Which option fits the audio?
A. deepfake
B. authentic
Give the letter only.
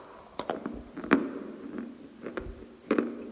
B